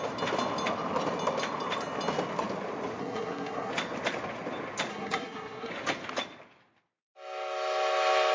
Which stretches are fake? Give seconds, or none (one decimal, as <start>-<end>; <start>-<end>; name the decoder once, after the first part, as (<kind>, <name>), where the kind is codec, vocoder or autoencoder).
3.0-3.7 (codec, SNAC); 4.9-5.7